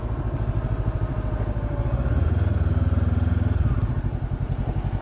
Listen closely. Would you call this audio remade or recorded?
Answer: recorded